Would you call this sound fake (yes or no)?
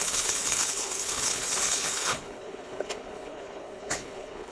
yes